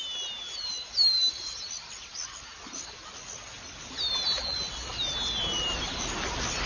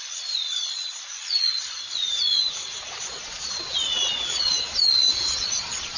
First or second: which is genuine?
first